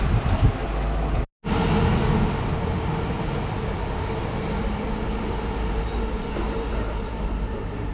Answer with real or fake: real